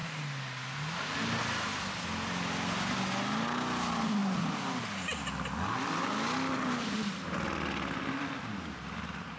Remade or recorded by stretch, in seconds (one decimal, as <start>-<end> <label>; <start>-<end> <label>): 0.0-9.4 recorded